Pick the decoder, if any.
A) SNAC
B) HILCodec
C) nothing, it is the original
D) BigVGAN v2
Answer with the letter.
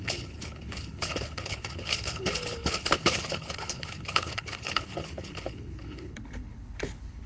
B